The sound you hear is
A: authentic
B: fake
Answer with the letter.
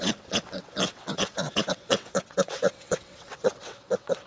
B